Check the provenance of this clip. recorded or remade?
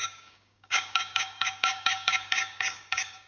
remade